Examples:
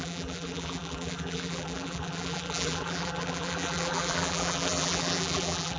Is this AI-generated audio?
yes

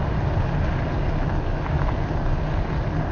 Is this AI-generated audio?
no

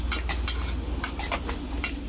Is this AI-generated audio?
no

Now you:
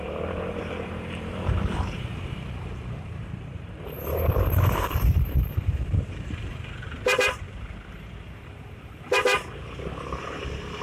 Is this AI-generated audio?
yes